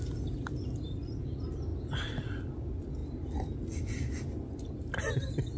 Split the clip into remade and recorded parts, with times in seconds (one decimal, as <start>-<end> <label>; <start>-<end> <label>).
0.0-5.6 recorded